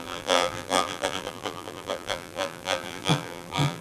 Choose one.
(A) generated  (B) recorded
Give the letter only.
A